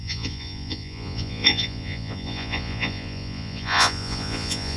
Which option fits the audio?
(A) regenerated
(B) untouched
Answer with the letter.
A